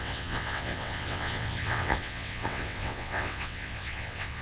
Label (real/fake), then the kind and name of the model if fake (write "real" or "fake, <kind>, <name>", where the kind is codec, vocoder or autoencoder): fake, vocoder, WaveNeXt